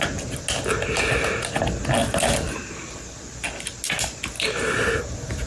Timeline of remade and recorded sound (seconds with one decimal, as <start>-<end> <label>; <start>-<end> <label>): 0.0-5.5 recorded